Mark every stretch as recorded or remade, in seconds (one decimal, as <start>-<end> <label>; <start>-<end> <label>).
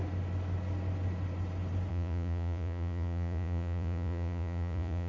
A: 0.0-1.9 recorded; 1.9-5.1 remade